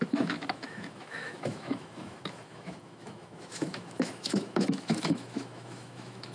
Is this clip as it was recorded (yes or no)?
no